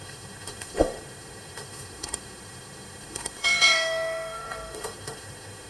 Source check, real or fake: fake